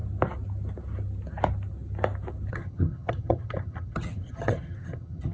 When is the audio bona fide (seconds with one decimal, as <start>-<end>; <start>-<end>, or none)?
0.0-2.5